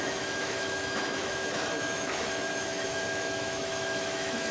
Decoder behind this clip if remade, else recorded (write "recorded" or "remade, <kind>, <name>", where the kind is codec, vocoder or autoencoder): remade, autoencoder, DAC-VAE